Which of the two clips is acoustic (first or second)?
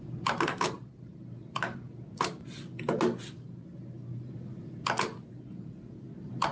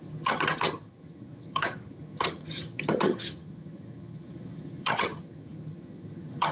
first